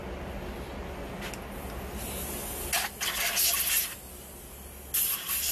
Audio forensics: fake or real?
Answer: real